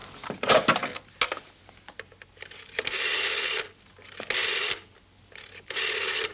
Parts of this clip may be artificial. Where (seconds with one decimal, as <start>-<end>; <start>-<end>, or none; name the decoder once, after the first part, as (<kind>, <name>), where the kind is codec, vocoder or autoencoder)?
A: none

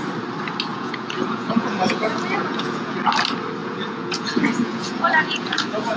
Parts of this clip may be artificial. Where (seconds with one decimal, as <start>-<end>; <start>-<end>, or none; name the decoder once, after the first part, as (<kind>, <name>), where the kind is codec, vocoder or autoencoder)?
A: 0.7-3.0 (vocoder, Vocos); 3.6-6.0